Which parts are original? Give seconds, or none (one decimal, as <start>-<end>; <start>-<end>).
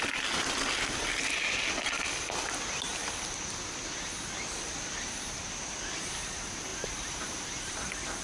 0.0-6.7; 7.7-8.2